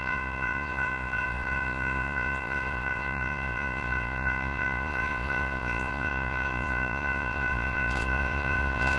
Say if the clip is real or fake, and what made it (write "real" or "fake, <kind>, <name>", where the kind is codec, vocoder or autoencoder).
fake, vocoder, Vocos